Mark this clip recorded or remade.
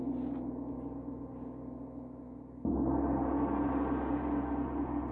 recorded